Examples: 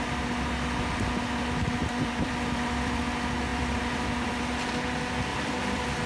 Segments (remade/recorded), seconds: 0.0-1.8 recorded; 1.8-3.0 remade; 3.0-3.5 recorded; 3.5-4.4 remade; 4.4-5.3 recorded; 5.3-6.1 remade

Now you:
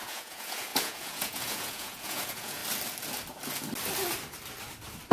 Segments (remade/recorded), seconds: 0.0-2.6 remade; 2.6-5.1 recorded

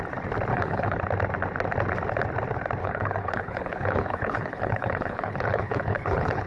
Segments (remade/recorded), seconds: 0.0-0.5 recorded; 0.5-1.0 remade; 1.0-2.8 recorded; 2.8-6.5 remade